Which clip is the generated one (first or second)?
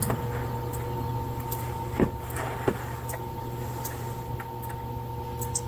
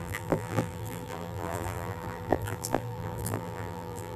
second